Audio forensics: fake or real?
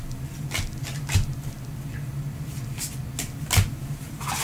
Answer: real